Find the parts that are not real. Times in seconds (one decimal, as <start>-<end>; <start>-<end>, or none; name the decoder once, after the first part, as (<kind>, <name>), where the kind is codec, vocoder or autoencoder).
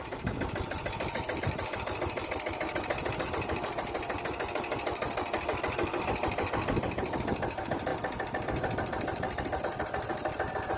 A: none